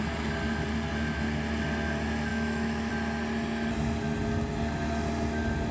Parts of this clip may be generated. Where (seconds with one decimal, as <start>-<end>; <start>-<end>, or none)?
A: 2.3-2.9